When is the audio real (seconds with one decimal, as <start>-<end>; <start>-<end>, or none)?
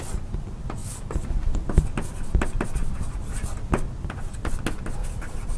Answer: 0.0-5.0